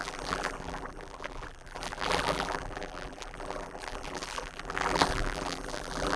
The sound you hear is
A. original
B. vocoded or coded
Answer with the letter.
B